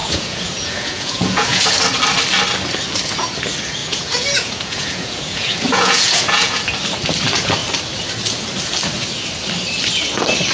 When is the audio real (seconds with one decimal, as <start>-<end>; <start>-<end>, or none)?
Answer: 1.7-3.8; 6.6-10.5